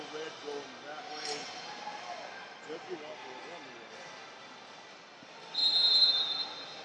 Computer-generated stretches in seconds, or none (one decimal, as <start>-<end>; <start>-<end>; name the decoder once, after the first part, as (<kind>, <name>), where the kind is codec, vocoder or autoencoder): none